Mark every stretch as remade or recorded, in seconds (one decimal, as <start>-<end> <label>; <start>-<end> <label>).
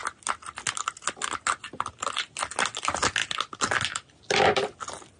0.0-5.2 recorded